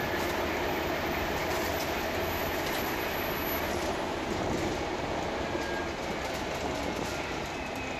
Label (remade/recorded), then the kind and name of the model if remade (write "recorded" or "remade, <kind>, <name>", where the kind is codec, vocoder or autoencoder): recorded